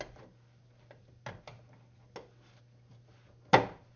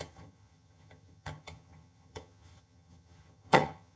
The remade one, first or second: second